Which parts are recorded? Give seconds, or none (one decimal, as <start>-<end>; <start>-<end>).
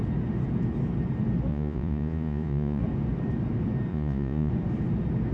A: 0.0-1.5; 2.8-3.9; 4.5-5.3